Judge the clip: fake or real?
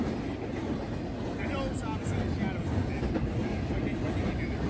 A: real